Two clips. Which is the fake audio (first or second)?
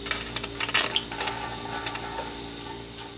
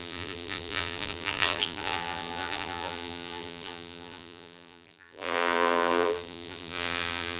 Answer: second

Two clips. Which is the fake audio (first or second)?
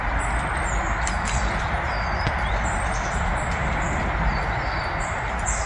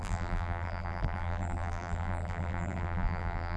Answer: second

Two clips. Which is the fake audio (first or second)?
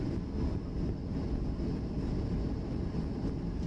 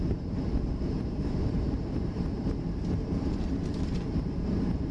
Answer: second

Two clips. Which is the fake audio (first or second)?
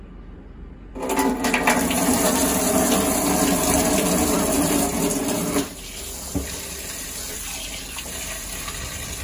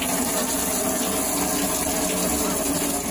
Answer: first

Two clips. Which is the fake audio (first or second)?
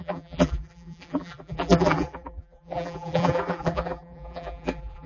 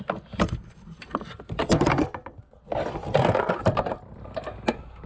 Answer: first